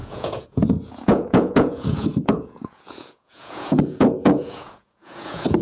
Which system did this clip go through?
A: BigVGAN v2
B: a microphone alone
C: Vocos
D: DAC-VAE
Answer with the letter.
C